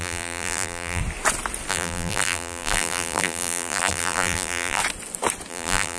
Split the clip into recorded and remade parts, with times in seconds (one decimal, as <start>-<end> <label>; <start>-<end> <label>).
0.0-1.0 remade; 1.0-1.7 recorded; 1.7-4.8 remade; 4.8-5.5 recorded; 5.5-6.0 remade